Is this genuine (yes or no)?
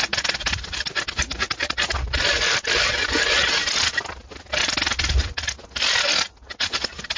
yes